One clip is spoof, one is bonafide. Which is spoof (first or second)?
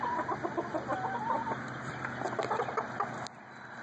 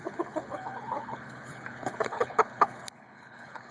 second